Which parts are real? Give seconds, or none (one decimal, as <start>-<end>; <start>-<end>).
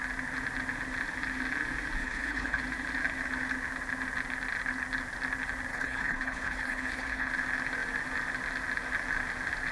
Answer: 0.0-2.0; 2.6-5.7; 7.3-9.7